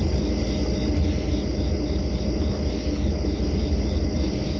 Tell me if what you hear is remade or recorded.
recorded